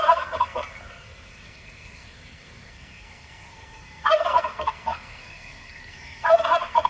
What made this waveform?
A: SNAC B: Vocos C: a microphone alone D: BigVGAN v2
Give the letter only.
A